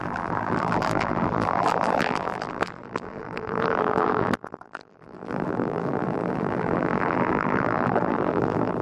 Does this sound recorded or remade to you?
remade